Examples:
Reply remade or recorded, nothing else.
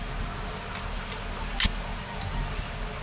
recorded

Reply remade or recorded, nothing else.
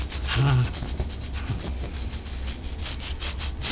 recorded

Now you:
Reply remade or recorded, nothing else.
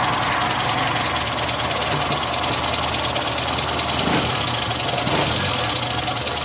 recorded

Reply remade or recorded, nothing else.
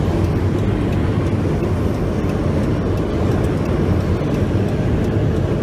recorded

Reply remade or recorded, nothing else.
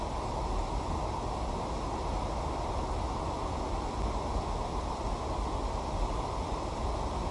recorded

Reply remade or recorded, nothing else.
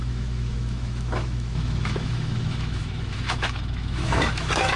remade